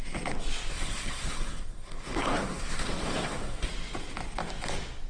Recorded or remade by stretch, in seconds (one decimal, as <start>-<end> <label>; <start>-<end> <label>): 0.0-0.7 recorded; 0.7-3.7 remade; 3.7-5.1 recorded